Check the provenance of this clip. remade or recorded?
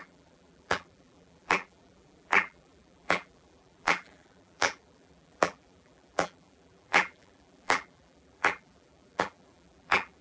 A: remade